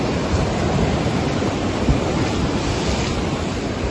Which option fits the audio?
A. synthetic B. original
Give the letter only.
B